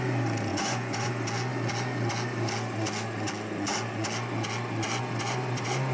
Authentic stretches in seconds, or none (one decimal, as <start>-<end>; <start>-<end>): 0.0-0.5; 1.1-5.9